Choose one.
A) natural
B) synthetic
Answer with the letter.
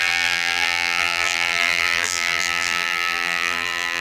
B